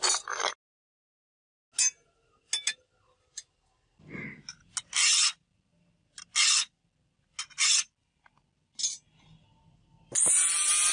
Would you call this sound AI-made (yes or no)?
no